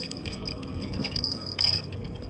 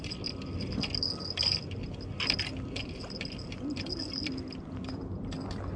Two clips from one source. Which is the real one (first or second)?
second